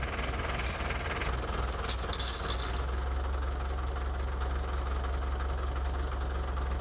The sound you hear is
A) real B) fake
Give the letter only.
A